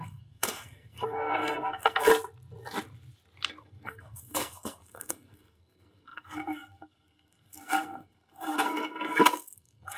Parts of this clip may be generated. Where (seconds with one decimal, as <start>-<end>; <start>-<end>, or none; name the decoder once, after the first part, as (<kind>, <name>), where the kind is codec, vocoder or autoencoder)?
0.0-2.1 (codec, SNAC); 3.6-10.0